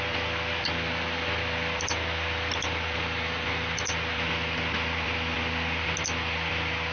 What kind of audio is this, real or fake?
real